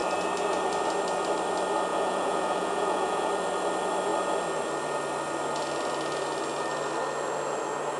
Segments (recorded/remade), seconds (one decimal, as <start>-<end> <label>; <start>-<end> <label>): 0.0-1.9 recorded; 1.9-3.3 remade; 3.3-8.0 recorded